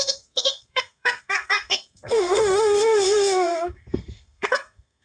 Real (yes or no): no